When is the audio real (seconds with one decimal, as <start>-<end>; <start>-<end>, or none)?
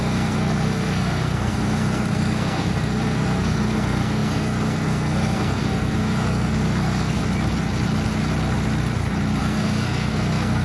7.2-9.4